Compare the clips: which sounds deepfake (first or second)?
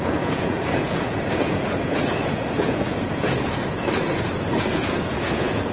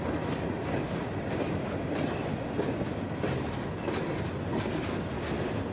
first